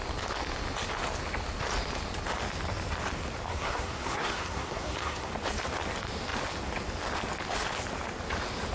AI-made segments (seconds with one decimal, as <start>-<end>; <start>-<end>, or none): 3.5-5.3